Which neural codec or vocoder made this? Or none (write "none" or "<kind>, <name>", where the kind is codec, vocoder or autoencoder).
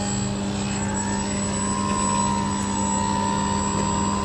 none